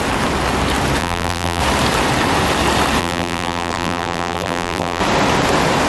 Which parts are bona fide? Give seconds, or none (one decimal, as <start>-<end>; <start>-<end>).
0.0-1.0; 1.6-3.0; 5.0-5.9